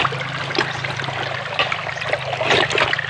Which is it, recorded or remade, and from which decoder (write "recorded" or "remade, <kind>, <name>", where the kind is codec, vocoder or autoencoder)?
recorded